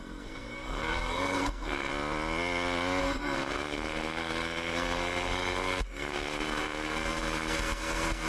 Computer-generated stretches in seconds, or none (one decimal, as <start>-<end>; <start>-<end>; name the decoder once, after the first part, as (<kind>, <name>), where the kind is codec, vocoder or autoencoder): 0.0-1.9 (codec, SNAC); 3.0-8.3